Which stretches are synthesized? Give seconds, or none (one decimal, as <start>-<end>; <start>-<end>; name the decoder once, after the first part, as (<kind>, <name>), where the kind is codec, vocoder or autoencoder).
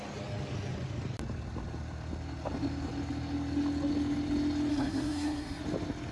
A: 4.7-5.6 (codec, SNAC)